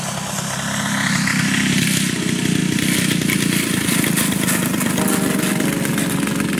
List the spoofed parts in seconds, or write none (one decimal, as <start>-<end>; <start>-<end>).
none